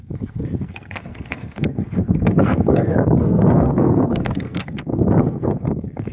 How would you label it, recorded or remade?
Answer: remade